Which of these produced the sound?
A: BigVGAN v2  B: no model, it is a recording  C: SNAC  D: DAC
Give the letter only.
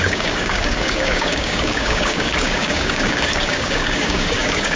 D